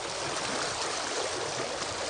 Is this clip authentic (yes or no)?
yes